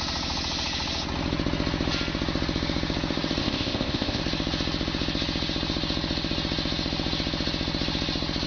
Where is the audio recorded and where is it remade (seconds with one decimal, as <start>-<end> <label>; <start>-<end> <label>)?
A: 0.0-3.4 recorded; 3.4-4.2 remade; 4.2-8.5 recorded